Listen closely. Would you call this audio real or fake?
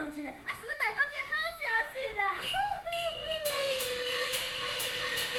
fake